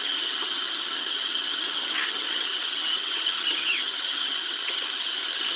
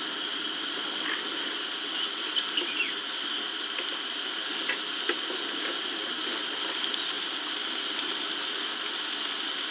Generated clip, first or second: first